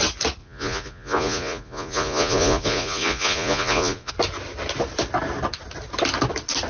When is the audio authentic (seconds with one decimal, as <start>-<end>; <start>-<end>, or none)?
0.0-0.4; 4.1-6.7